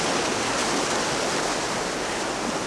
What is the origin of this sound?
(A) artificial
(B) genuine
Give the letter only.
B